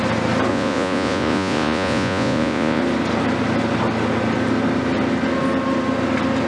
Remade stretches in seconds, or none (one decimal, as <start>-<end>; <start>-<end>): 0.5-2.8